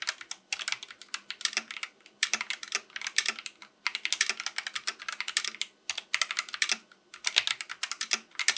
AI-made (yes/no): no